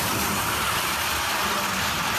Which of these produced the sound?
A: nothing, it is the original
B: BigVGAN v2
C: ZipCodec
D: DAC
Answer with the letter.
B